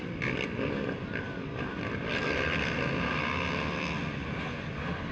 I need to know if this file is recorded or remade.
recorded